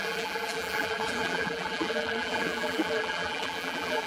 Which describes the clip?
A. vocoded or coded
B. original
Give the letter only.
A